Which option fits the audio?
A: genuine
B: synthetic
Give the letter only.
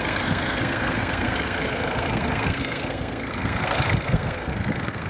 B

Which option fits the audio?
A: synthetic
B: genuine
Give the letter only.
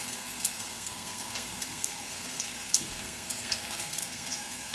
A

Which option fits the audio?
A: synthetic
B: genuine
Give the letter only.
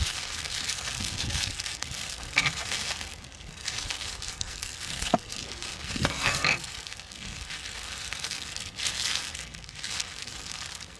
A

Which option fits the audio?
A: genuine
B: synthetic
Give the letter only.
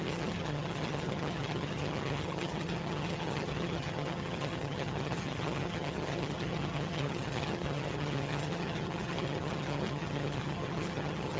B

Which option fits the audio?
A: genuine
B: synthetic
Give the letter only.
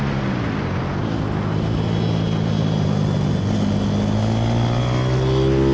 A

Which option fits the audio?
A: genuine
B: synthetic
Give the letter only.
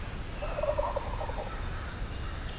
A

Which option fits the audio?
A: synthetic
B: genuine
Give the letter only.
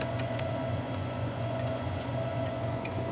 A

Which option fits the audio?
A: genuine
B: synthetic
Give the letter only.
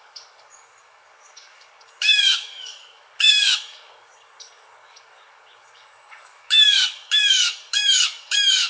B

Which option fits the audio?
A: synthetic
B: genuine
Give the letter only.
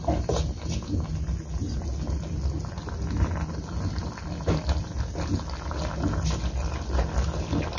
B